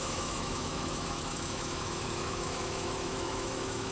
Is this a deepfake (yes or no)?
yes